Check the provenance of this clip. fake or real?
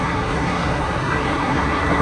fake